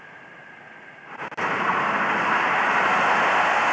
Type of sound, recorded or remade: recorded